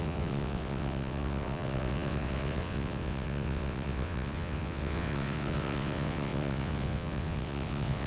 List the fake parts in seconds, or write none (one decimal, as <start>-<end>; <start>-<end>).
0.0-8.1